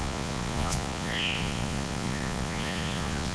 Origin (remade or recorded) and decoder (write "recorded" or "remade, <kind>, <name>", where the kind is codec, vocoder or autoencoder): remade, vocoder, Vocos